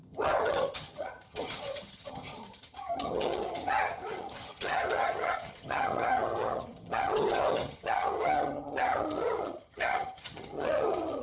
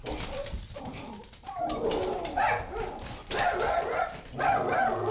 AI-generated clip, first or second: first